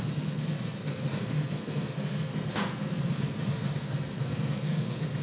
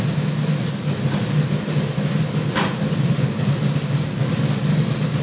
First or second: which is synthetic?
first